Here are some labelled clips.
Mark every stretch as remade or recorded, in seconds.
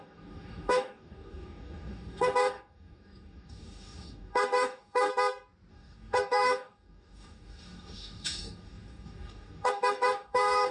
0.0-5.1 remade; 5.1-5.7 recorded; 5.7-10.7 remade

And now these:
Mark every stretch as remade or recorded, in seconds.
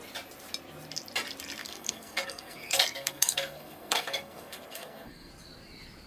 0.0-1.6 recorded; 1.6-5.3 remade; 5.3-6.1 recorded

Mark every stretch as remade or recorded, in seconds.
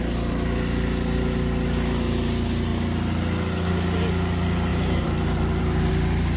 0.0-4.7 recorded; 4.7-5.9 remade; 5.9-6.4 recorded